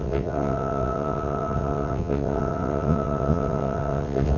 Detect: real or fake fake